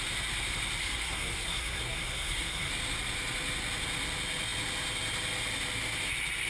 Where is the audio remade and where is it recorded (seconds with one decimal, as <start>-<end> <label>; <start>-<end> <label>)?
0.0-0.8 recorded; 0.8-2.7 remade; 2.7-6.5 recorded